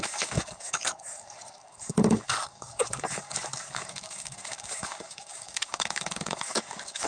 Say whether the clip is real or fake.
fake